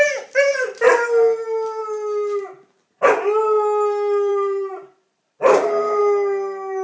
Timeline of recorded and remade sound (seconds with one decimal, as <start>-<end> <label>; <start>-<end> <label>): 0.0-4.3 recorded; 4.3-6.0 remade; 6.0-6.8 recorded